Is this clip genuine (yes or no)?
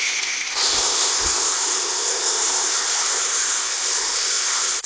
no